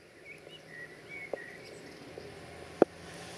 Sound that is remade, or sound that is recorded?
recorded